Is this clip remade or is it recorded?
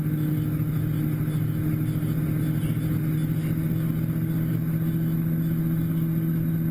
recorded